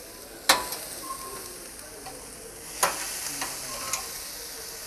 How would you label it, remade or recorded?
recorded